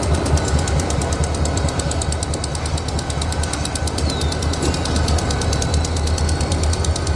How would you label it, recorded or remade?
recorded